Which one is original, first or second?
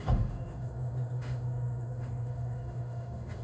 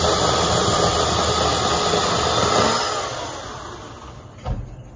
second